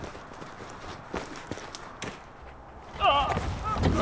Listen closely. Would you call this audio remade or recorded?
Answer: recorded